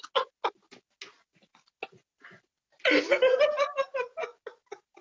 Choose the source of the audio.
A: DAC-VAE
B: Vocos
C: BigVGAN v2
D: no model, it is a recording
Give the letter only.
D